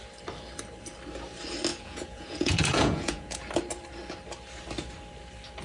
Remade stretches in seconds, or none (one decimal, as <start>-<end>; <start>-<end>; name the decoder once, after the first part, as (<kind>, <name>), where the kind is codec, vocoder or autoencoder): 1.7-3.4 (vocoder, Vocos)